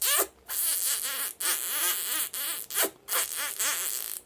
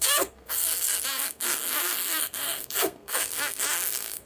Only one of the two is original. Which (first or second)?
first